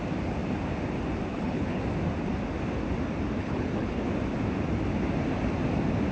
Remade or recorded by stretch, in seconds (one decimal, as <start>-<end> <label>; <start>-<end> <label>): 0.0-1.3 recorded; 1.3-1.8 remade; 1.8-3.4 recorded; 3.4-4.1 remade; 4.1-6.1 recorded